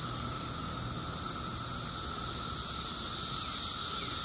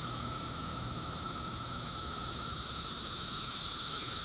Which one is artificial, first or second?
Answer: second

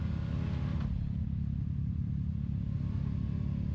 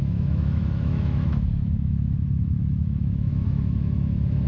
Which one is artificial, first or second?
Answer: second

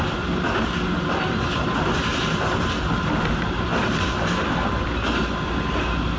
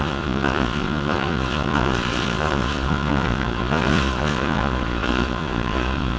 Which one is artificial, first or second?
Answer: second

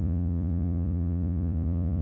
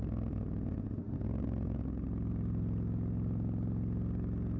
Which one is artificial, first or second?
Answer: first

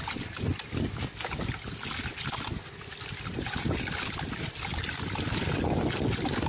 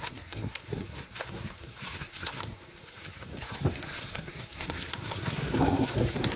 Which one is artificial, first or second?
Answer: second